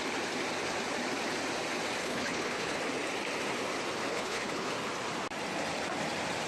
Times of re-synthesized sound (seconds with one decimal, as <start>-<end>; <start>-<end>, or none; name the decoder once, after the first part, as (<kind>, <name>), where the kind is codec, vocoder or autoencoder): 2.0-2.8 (codec, HILCodec); 4.1-4.7